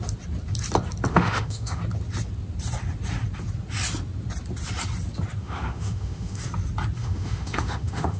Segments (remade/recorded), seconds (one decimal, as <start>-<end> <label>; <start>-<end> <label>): 0.0-1.1 recorded; 1.1-1.8 remade; 1.8-5.4 recorded; 5.4-6.4 remade; 6.4-7.0 recorded; 7.0-8.2 remade